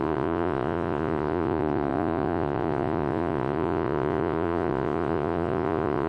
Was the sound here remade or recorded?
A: remade